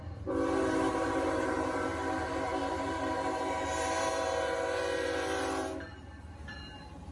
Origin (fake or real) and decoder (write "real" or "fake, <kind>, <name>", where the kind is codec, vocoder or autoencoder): fake, vocoder, BigVGAN v2